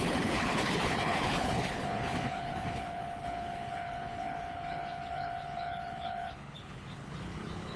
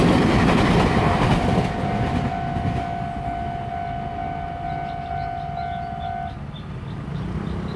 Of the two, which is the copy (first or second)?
first